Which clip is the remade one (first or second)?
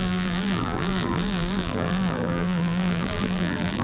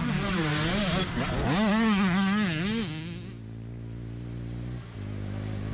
first